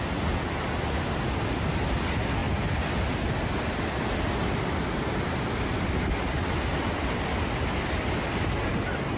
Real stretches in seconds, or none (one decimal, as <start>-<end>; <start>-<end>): 0.0-9.2